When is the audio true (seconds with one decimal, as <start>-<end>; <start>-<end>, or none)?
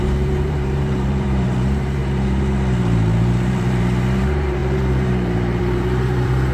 none